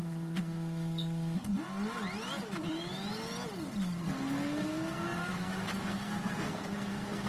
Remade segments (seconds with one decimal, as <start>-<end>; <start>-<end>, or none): 0.0-1.5; 4.0-7.3